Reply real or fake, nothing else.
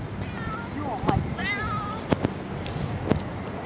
real